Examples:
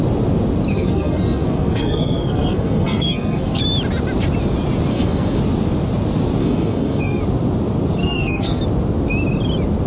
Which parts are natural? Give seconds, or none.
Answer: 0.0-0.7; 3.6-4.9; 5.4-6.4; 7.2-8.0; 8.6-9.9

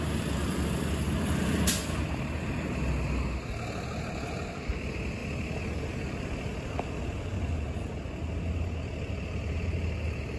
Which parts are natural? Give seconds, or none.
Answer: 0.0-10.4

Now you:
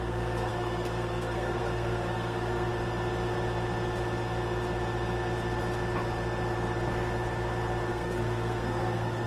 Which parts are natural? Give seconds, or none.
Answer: 2.7-7.9